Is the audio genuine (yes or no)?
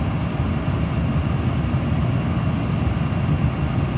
yes